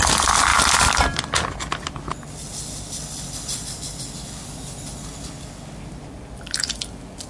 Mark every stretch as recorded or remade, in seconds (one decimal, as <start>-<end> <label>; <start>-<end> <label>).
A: 0.0-7.3 recorded